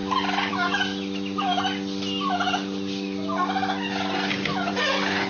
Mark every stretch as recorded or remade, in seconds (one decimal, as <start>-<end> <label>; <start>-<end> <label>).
0.0-5.3 recorded